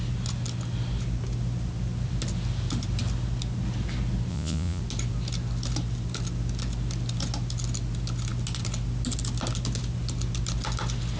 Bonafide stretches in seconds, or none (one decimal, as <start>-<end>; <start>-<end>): 0.0-4.3; 4.8-11.2